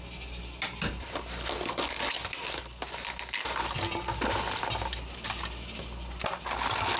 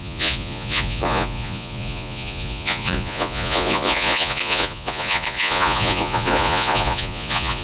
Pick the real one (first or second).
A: first